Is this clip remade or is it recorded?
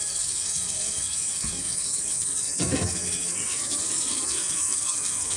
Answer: remade